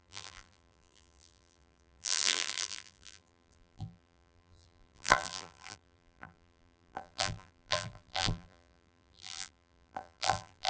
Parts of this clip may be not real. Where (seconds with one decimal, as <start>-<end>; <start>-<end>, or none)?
0.0-10.7